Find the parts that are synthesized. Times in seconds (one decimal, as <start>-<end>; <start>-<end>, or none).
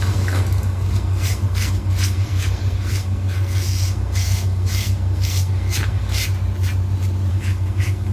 0.0-6.2; 7.3-8.1